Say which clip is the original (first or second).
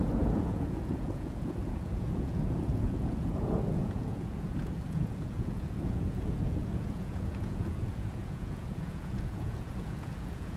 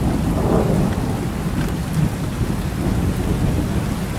second